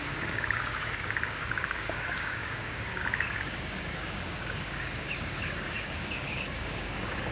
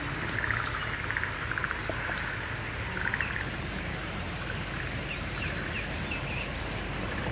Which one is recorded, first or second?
second